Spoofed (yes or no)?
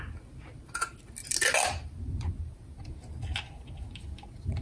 no